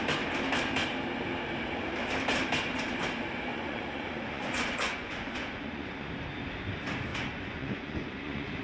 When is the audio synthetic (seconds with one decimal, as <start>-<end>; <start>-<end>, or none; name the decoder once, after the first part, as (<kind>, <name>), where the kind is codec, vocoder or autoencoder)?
3.5-6.1 (vocoder, Vocos); 7.1-8.6